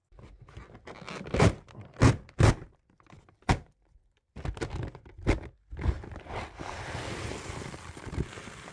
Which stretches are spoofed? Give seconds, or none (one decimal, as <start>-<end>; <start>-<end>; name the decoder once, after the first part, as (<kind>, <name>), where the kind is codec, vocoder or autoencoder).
none